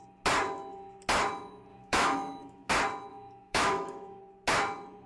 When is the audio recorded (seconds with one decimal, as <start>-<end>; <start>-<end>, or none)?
0.0-1.7; 2.7-3.1; 4.2-5.1